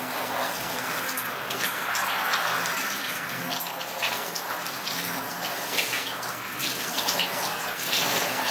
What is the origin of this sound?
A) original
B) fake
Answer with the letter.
B